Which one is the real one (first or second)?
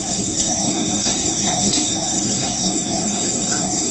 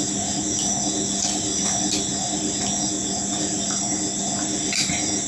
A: second